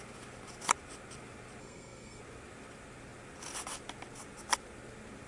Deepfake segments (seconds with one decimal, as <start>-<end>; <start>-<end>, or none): 1.6-2.2